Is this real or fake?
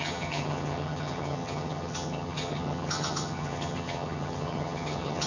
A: fake